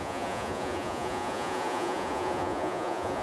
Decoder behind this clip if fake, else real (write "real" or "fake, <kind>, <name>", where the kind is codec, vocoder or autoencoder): fake, vocoder, Vocos